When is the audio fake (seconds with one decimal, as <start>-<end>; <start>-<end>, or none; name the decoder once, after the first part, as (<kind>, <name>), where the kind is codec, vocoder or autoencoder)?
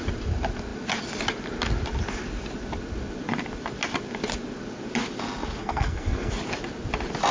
5.6-6.3 (codec, SNAC)